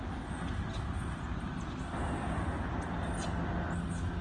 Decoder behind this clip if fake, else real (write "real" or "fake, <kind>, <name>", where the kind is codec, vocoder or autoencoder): real